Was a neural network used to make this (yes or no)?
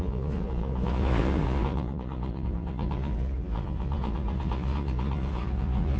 yes